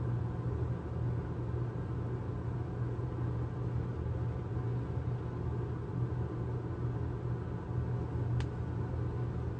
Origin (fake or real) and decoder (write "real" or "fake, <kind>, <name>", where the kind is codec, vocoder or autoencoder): real